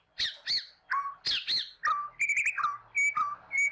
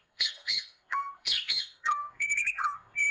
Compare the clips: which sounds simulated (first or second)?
second